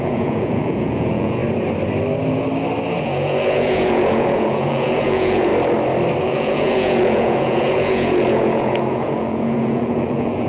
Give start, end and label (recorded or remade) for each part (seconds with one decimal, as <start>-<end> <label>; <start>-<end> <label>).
0.0-1.4 remade; 1.4-3.0 recorded; 3.0-5.5 remade; 5.5-6.2 recorded; 6.2-10.5 remade